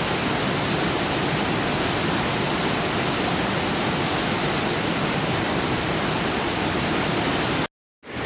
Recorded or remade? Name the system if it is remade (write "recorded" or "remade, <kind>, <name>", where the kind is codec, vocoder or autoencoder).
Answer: recorded